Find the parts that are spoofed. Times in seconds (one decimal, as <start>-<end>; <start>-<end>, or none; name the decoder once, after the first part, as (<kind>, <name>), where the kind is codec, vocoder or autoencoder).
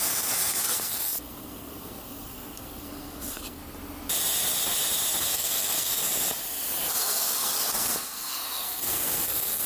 0.0-3.6 (codec, SNAC); 5.2-6.0; 6.9-9.7